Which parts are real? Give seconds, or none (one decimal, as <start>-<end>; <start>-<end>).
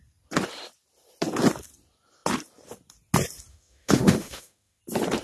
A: 0.0-3.5; 4.8-5.2